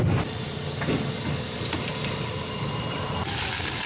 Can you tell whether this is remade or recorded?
recorded